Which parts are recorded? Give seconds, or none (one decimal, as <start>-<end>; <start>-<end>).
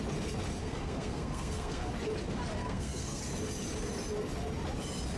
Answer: 0.0-0.6; 1.9-2.6; 3.2-5.2